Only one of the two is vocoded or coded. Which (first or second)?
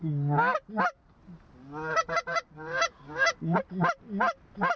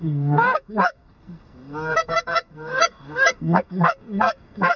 second